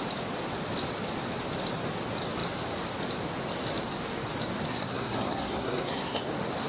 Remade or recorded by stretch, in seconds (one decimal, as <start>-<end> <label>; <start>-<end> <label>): 0.0-4.7 recorded; 4.7-6.2 remade; 6.2-6.7 recorded